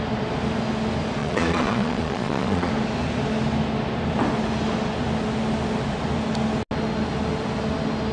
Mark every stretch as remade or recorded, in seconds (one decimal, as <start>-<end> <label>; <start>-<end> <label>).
0.0-1.2 recorded; 1.2-2.7 remade; 2.7-8.1 recorded